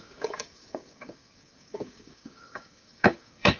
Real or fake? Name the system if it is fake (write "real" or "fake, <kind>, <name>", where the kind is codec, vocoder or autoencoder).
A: fake, codec, DAC